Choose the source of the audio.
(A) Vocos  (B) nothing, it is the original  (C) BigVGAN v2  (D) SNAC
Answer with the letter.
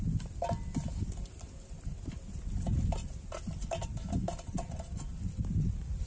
B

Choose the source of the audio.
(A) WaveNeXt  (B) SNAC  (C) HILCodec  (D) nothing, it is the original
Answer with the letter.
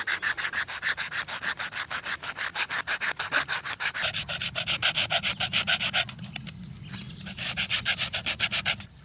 D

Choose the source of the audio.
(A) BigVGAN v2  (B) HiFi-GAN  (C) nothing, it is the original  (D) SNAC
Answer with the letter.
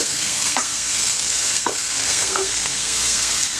D